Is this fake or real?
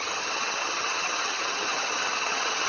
fake